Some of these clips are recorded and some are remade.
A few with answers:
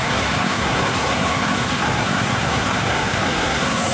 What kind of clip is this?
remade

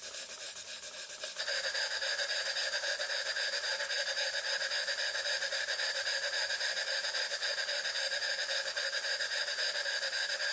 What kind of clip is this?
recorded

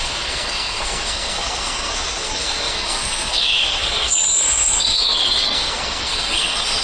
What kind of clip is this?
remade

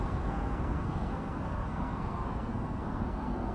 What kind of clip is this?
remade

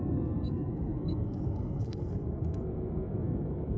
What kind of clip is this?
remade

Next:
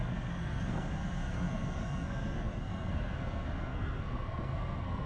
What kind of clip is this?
remade